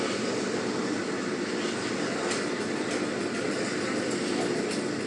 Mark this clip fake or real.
real